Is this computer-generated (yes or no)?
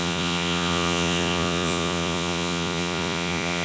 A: yes